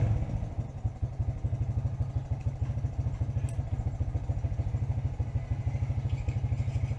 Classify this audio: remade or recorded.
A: recorded